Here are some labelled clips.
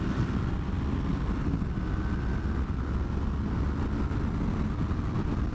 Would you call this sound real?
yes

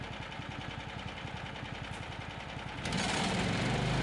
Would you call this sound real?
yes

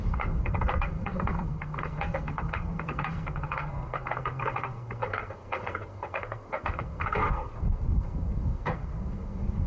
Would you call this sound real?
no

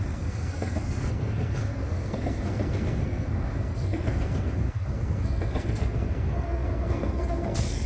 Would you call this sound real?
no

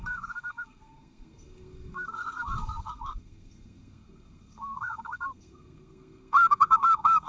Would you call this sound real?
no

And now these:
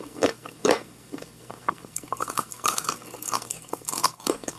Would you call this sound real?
no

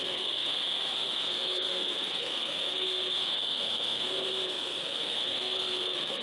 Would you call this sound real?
no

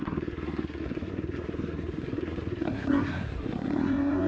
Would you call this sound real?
no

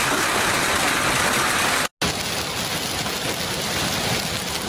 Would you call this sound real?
yes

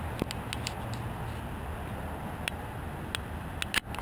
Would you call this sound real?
yes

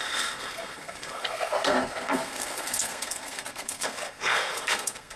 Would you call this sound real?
no